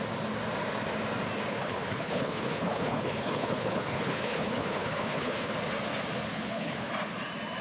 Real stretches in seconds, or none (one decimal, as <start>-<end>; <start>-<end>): 0.0-1.5; 5.5-6.3; 6.9-7.6